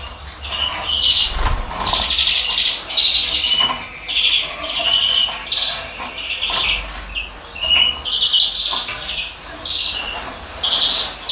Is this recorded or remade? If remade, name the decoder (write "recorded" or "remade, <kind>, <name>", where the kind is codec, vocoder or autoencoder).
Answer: recorded